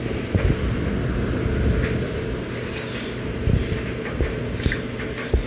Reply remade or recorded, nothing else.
recorded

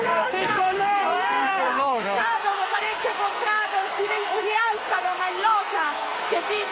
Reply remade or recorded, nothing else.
remade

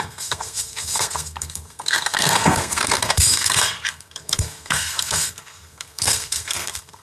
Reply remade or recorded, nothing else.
remade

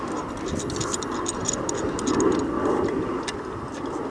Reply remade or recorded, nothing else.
recorded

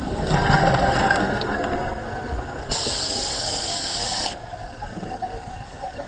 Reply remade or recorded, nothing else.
remade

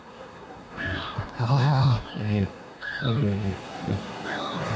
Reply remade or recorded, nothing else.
remade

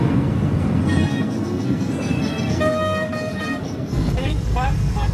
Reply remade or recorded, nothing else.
remade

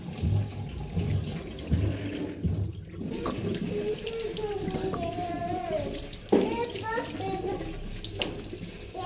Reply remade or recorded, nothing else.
recorded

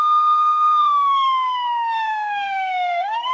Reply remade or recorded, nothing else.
remade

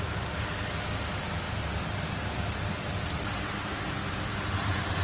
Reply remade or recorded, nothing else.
recorded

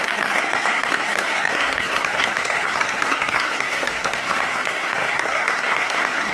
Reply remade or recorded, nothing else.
remade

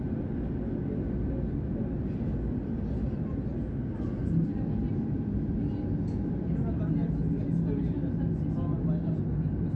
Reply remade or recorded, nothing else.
recorded